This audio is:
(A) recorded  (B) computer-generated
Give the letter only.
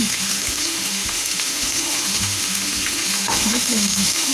B